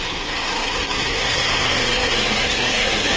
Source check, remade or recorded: remade